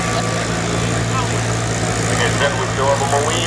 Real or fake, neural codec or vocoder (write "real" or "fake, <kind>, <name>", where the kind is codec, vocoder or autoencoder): real